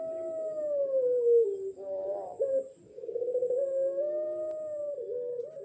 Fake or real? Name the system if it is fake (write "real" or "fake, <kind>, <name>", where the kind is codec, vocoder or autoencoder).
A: real